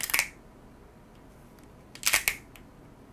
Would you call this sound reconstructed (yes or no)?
no